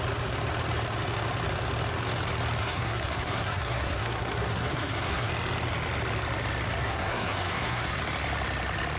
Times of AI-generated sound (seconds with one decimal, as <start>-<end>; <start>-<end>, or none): 2.6-5.3; 6.8-8.0